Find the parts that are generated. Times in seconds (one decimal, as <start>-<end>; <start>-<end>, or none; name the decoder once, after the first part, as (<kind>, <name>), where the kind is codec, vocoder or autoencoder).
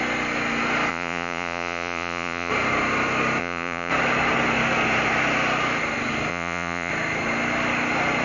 0.9-2.5 (vocoder, Vocos); 3.4-3.9; 6.3-6.9